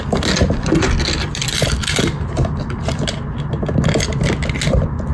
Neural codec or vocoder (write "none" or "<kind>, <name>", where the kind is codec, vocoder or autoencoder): none